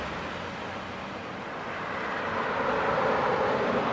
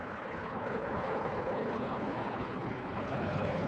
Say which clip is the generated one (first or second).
second